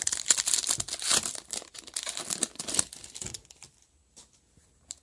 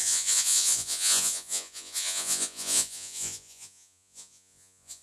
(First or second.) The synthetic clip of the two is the second